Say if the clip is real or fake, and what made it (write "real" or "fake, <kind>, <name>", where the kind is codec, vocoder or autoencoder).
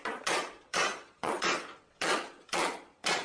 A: fake, vocoder, Vocos